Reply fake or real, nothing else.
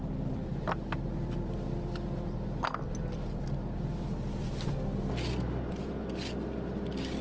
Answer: real